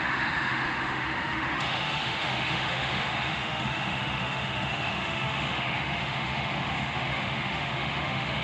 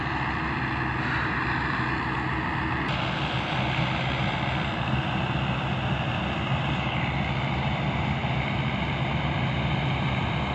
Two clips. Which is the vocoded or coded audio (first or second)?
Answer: first